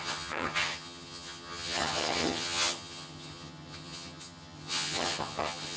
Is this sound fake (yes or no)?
yes